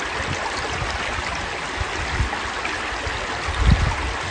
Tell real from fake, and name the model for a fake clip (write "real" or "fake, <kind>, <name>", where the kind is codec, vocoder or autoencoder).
real